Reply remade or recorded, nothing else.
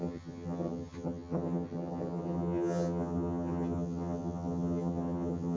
remade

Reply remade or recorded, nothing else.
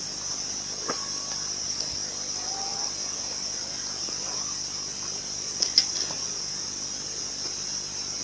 recorded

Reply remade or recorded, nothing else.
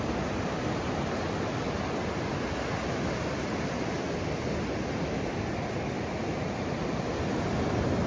recorded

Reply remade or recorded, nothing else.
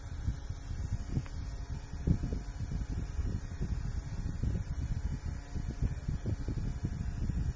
recorded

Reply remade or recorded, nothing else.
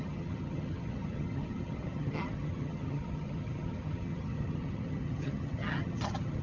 remade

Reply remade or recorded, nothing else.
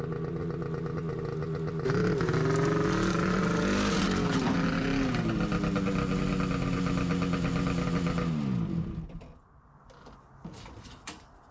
recorded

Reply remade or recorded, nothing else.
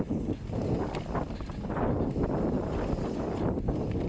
recorded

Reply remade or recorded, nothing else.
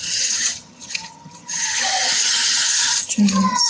remade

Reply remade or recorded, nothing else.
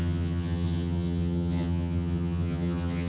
remade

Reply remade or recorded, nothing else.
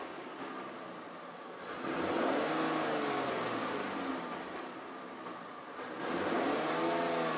recorded